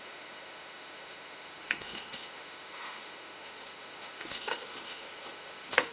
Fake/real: fake